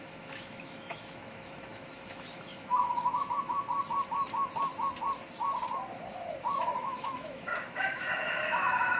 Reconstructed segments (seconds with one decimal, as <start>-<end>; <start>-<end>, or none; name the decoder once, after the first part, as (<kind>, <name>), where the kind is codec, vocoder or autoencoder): 0.0-3.7 (autoencoder, DAC-VAE); 6.5-9.0